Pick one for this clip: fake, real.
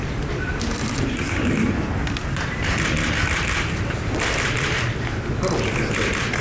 fake